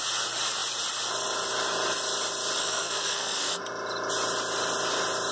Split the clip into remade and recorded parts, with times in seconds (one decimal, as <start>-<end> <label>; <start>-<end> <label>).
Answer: 0.0-2.6 recorded; 2.6-3.6 remade; 3.6-5.3 recorded